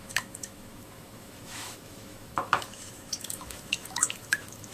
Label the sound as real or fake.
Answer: fake